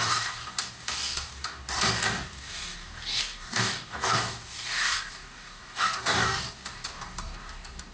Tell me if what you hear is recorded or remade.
remade